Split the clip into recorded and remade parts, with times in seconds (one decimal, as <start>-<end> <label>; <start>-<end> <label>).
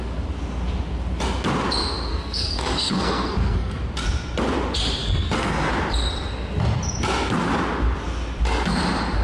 0.0-2.1 recorded; 2.1-3.8 remade; 3.8-5.0 recorded; 5.0-5.7 remade; 5.7-9.2 recorded